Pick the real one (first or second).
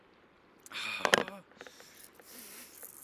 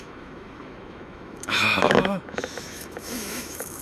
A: first